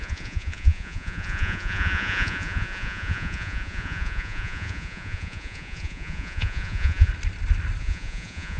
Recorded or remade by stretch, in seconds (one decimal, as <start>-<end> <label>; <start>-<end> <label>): 0.0-7.1 remade; 7.1-7.8 recorded; 7.8-8.6 remade

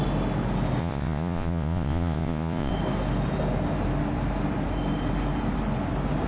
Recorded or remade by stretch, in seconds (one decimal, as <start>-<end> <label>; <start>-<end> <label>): 0.0-0.8 recorded; 0.8-2.7 remade; 2.7-6.3 recorded